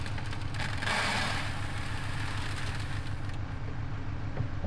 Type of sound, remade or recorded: recorded